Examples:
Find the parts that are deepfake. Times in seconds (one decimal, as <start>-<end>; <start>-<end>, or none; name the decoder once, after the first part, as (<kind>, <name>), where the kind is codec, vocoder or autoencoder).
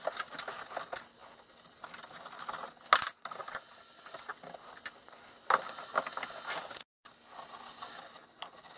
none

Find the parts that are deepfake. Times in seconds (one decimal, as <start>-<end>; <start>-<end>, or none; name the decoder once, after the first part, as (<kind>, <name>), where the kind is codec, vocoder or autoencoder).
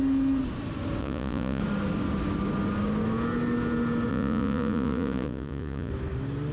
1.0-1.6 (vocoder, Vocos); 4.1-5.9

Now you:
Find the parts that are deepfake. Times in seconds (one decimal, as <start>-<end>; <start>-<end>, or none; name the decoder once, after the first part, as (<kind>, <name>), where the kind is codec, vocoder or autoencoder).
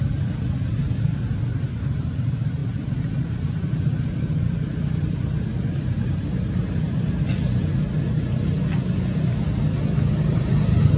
none